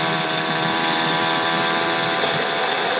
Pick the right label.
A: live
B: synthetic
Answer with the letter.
A